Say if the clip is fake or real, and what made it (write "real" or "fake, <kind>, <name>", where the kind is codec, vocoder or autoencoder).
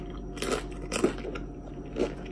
real